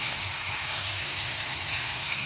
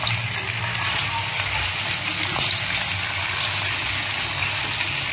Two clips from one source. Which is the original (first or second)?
second